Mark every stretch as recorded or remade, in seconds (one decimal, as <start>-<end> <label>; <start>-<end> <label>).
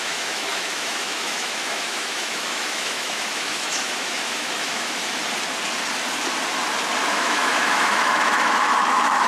0.0-5.2 remade; 5.2-7.1 recorded; 7.1-9.3 remade